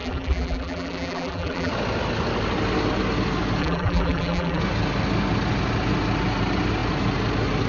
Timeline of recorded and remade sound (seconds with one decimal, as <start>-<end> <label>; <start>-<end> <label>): 0.0-1.7 remade; 1.7-3.6 recorded; 3.6-4.6 remade; 4.6-7.7 recorded